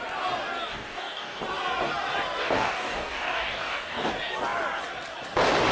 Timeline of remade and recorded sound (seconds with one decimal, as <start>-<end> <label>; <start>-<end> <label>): 0.0-0.7 recorded; 0.7-1.4 remade; 1.4-2.4 recorded; 2.4-4.1 remade; 4.1-5.7 recorded

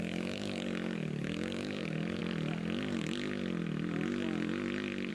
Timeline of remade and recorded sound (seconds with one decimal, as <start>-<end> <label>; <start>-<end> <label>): 0.0-2.2 remade; 2.2-5.1 recorded

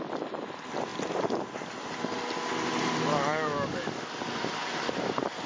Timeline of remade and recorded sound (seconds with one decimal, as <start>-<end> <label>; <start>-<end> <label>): 0.0-3.1 recorded; 3.1-4.1 remade; 4.1-5.5 recorded

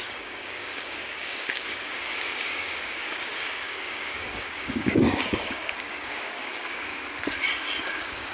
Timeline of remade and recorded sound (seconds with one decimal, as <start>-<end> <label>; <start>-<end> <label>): 0.0-6.9 remade; 6.9-7.8 recorded; 7.8-8.3 remade

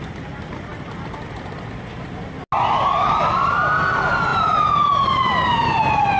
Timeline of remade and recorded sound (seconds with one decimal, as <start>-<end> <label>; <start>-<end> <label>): 0.0-6.2 recorded